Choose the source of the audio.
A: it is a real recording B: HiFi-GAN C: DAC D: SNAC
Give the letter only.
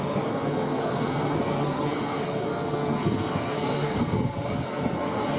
D